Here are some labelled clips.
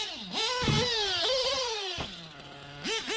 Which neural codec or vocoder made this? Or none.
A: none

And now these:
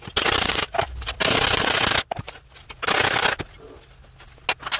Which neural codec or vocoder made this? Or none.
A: none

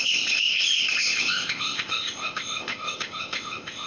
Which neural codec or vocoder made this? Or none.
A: codec, ZipCodec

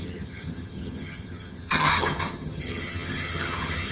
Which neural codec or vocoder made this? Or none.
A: vocoder, HiFi-GAN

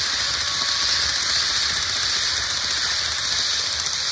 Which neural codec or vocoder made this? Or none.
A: none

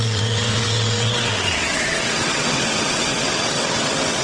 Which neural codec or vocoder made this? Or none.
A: vocoder, WaveNeXt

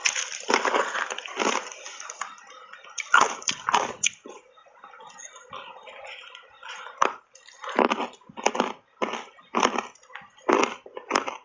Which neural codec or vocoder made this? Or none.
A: none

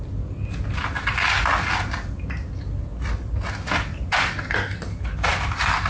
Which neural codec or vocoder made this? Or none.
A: none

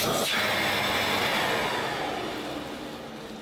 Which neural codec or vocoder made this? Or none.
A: none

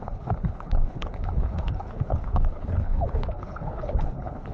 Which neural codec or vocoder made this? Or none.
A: codec, HILCodec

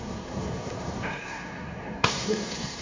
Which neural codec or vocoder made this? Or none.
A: codec, SNAC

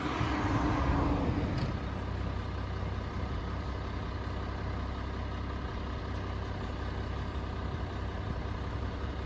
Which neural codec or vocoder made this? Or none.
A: none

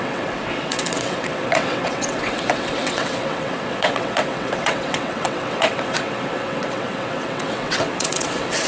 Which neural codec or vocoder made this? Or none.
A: vocoder, WaveNeXt